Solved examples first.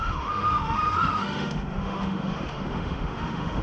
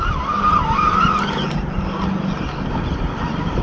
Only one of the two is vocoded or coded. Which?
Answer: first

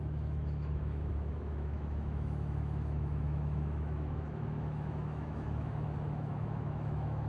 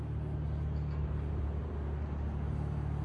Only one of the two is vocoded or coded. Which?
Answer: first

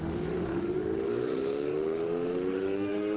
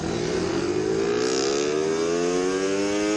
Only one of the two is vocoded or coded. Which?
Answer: first